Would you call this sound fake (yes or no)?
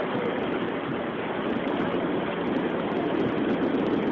no